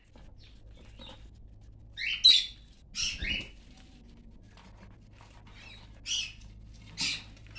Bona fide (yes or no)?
yes